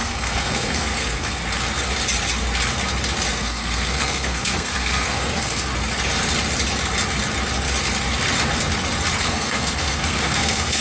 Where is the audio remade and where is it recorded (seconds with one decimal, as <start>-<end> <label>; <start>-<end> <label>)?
0.0-1.4 remade; 1.4-3.3 recorded; 3.3-5.7 remade; 5.7-9.2 recorded; 9.2-10.8 remade